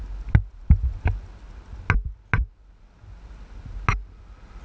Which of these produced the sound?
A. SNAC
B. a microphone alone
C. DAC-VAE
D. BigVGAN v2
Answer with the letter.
B